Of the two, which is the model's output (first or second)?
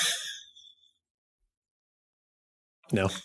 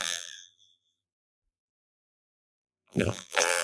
second